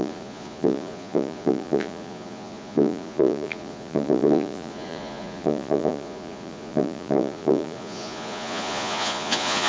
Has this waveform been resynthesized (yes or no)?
yes